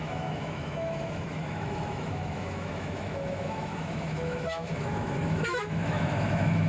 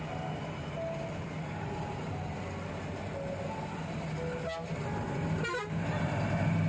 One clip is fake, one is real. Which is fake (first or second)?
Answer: first